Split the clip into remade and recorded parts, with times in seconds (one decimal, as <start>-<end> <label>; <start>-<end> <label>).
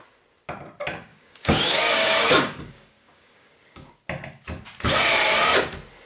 0.0-1.1 recorded; 1.1-3.9 remade; 3.9-6.1 recorded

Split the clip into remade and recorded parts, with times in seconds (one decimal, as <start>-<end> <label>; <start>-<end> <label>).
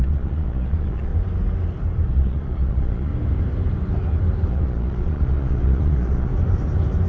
0.0-1.1 remade; 1.1-2.1 recorded; 2.1-3.1 remade; 3.1-4.5 recorded; 4.5-6.3 remade; 6.3-7.1 recorded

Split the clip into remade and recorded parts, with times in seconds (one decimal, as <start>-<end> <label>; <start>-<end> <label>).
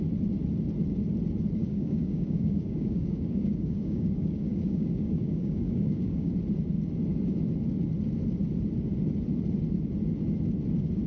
0.0-1.6 recorded; 1.6-6.3 remade; 6.3-11.1 recorded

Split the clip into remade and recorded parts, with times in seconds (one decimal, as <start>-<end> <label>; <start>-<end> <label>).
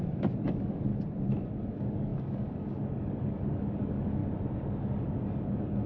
0.0-0.9 remade; 0.9-1.7 recorded; 1.7-4.2 remade; 4.2-4.8 recorded; 4.8-5.9 remade